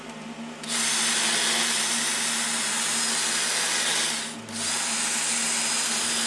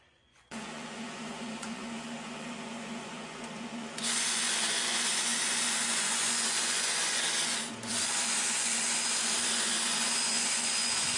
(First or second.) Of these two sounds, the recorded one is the first